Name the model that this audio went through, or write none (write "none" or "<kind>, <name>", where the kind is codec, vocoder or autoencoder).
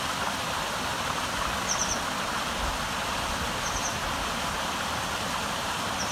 none